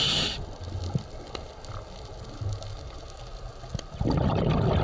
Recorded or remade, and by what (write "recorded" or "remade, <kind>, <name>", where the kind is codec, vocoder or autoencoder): recorded